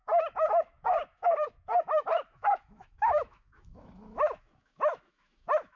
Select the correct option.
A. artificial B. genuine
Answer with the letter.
A